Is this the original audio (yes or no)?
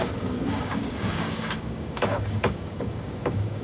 no